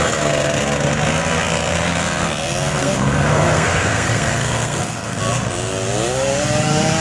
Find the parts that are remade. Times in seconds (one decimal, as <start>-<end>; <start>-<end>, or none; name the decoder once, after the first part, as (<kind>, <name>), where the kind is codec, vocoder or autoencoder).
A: 2.8-5.2 (codec, SNAC)